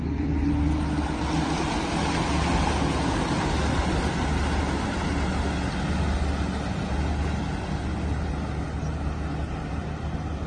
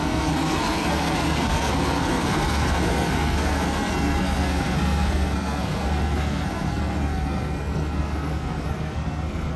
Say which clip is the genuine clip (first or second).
first